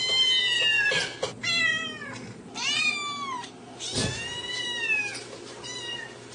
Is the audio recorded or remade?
recorded